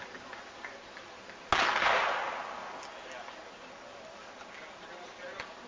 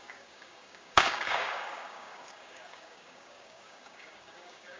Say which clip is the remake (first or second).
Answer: second